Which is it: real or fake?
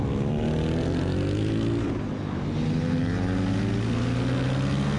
real